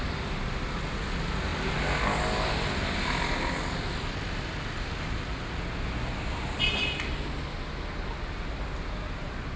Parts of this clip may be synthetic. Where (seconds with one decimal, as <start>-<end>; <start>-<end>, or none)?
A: none